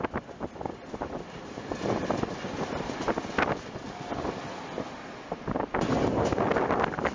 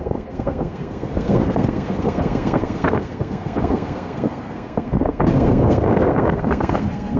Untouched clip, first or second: first